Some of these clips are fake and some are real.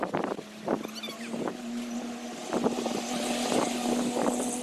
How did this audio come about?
real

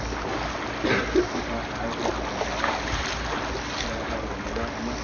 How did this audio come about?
real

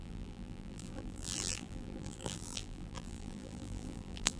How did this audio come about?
fake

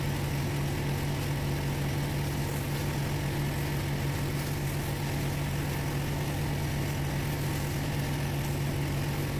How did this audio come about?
real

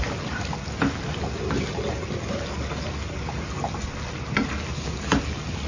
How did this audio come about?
real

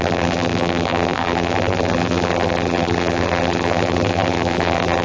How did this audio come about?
fake